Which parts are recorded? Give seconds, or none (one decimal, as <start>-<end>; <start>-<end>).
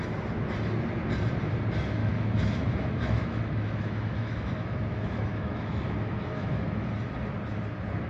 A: 0.0-2.0; 6.9-8.1